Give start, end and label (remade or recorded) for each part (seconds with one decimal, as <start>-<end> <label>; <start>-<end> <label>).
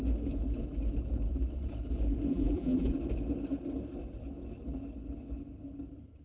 0.0-2.3 recorded; 2.3-2.9 remade; 2.9-6.2 recorded